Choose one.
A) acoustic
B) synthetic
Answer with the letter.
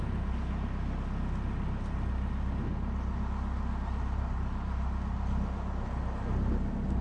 A